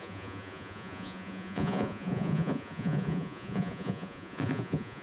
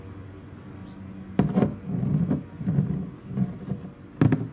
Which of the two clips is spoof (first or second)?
first